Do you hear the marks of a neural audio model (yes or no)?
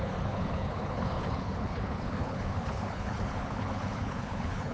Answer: yes